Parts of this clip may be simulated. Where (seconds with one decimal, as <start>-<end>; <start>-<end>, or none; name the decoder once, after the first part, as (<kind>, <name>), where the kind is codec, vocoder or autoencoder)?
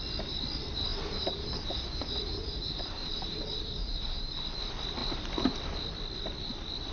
0.9-4.6 (vocoder, BigVGAN v2)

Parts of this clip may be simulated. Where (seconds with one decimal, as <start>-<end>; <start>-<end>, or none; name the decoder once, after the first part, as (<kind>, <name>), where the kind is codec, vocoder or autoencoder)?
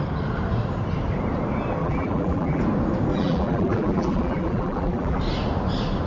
1.8-2.6 (vocoder, BigVGAN v2); 3.1-5.2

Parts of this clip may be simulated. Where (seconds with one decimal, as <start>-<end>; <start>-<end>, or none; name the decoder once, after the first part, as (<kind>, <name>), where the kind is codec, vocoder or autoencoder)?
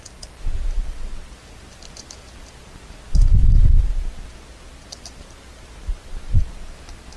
none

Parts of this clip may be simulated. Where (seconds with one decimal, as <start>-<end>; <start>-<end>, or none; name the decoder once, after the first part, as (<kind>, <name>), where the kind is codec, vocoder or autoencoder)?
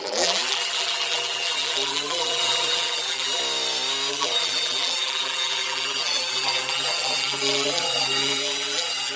0.0-3.4 (vocoder, BigVGAN v2); 4.1-9.2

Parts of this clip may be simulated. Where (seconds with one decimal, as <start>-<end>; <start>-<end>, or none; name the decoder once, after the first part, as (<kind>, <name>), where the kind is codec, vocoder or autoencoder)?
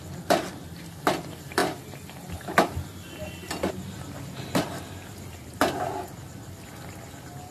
3.4-5.7 (vocoder, BigVGAN v2)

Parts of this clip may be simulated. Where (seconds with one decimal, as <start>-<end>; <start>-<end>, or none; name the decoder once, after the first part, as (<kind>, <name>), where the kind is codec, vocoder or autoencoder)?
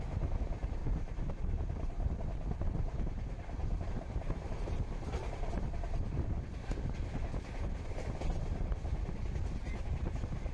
0.8-2.7 (vocoder, BigVGAN v2); 3.6-6.3